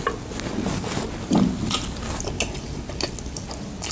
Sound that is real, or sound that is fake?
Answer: real